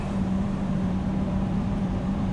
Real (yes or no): no